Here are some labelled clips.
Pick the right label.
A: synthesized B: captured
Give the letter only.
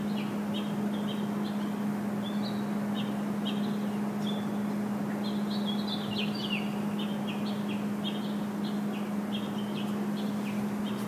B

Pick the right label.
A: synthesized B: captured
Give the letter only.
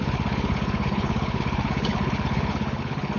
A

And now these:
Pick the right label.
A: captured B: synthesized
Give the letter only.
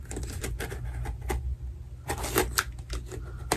A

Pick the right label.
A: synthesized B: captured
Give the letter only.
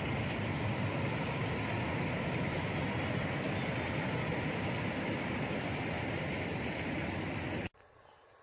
B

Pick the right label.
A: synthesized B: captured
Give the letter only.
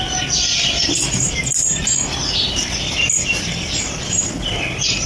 B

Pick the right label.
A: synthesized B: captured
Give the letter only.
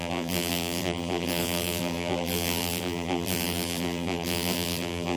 A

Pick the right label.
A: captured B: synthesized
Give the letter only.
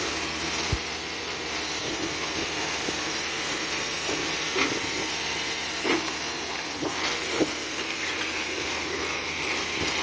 A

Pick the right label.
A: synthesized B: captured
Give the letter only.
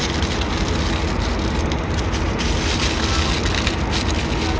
B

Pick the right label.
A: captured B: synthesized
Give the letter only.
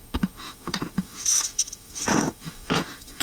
B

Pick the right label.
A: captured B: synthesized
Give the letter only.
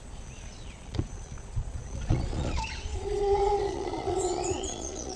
B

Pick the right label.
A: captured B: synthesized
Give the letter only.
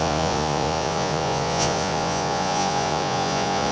B